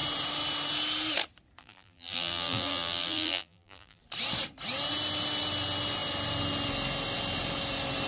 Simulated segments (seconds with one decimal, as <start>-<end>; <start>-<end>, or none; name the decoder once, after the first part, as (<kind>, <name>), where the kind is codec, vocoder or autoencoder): 1.6-4.0 (vocoder, BigVGAN v2)